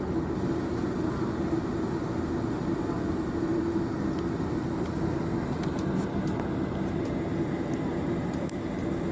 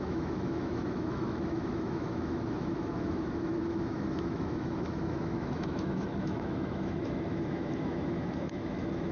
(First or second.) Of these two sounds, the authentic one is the first